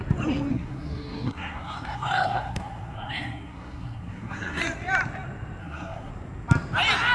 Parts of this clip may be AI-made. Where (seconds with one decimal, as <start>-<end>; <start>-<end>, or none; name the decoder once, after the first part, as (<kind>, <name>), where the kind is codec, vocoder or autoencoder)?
0.5-4.6 (codec, SNAC); 5.6-6.1